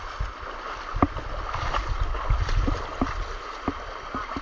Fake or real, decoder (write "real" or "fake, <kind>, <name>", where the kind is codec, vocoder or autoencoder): real